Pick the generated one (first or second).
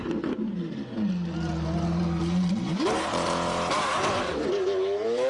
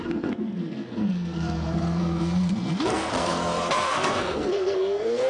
second